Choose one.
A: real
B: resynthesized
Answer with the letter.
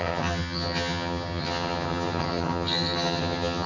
B